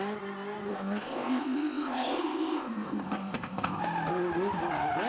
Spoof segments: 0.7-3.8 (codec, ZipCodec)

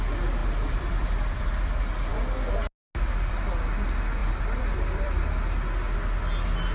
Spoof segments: 0.4-1.5 (vocoder, BigVGAN v2); 4.2-5.1

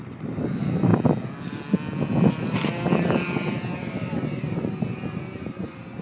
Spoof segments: 0.0-0.9 (vocoder, BigVGAN v2); 3.0-6.0

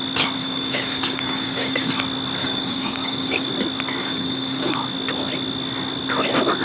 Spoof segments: 0.4-1.9 (codec, DAC); 2.4-3.5; 4.0-4.7